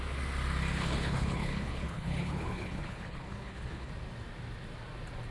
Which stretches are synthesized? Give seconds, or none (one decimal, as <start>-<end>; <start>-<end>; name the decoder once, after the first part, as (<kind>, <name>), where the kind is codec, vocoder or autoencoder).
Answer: 0.7-3.9 (codec, HILCodec)